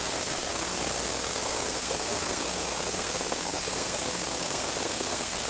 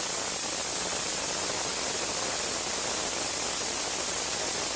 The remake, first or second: first